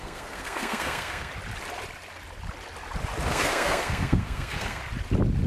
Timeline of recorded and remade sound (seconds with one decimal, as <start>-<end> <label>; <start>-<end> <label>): 0.0-1.3 remade; 1.3-3.3 recorded; 3.3-4.8 remade; 4.8-5.5 recorded